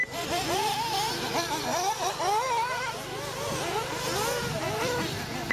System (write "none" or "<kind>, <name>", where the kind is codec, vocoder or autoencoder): none